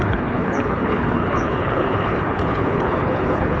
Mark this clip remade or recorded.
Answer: remade